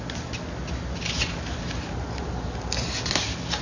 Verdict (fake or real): real